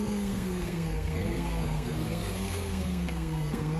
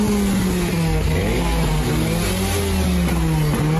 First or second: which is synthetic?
first